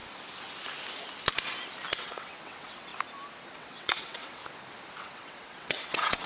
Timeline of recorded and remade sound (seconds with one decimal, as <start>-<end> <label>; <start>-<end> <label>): 0.0-2.0 recorded; 2.0-2.9 remade; 2.9-3.5 recorded; 3.5-4.4 remade; 4.4-5.0 recorded; 5.0-6.3 remade